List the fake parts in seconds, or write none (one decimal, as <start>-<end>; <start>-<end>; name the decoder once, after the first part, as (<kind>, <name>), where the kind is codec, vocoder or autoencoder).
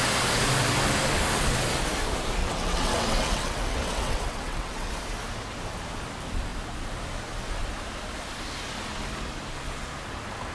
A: 2.4-4.9 (vocoder, WaveNeXt)